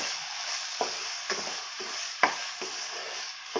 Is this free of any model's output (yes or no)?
no